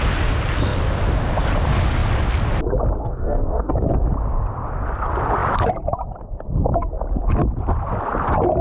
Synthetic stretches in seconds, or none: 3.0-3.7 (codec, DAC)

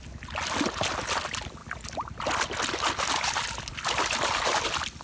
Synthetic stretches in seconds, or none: none

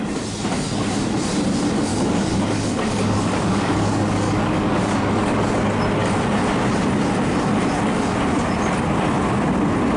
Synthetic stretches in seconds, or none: 1.9-5.5 (codec, DAC)

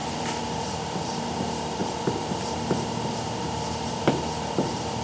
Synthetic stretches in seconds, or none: none

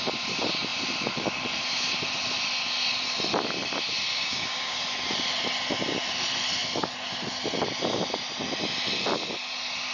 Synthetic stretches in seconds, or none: 4.1-4.8 (codec, DAC)

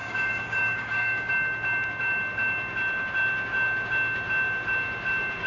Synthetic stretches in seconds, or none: 0.0-1.3 (codec, DAC)

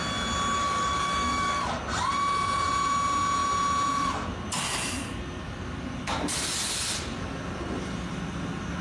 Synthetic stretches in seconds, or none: 0.6-1.7 (codec, DAC)

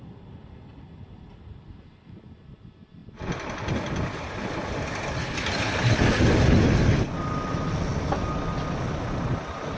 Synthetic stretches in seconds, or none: none